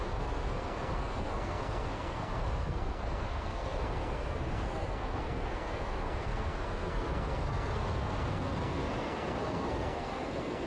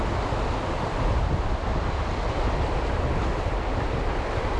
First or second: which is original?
second